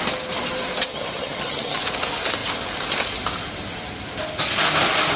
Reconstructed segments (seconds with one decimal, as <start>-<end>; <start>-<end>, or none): 0.9-1.8